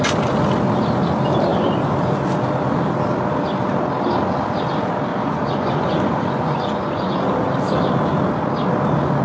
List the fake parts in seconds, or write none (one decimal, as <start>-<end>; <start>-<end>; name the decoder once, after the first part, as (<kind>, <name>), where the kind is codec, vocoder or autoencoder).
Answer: 5.1-7.3 (vocoder, Vocos)